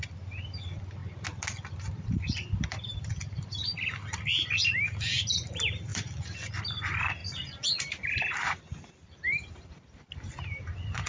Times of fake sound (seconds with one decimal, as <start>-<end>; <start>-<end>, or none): 0.0-1.0; 1.7-11.1